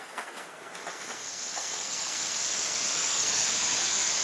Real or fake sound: fake